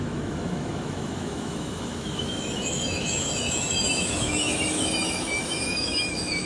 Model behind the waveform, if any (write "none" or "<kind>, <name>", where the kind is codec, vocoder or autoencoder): autoencoder, DAC-VAE